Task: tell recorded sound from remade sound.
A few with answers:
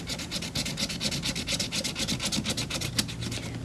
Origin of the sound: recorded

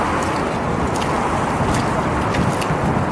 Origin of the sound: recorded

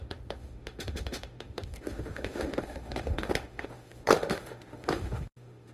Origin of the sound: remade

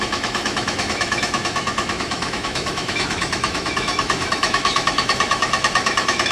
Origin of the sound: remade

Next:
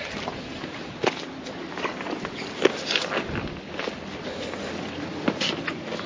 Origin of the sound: recorded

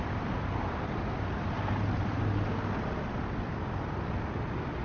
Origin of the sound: recorded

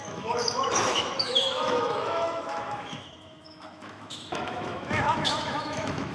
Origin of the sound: remade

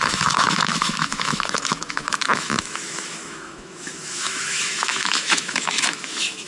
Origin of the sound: remade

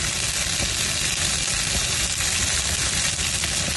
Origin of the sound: recorded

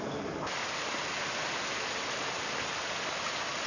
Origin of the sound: recorded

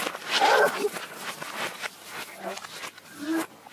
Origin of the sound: recorded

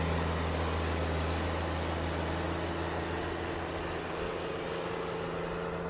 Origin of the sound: recorded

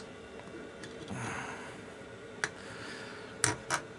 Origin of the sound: recorded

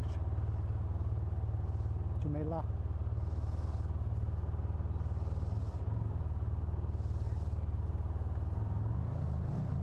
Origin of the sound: recorded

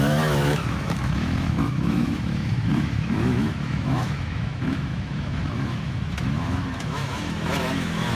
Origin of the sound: remade